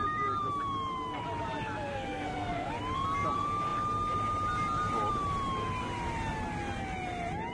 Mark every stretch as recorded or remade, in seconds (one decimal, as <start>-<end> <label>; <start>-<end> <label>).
0.0-1.9 recorded; 1.9-2.7 remade; 2.7-7.5 recorded